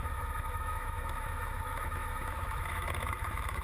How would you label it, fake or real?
fake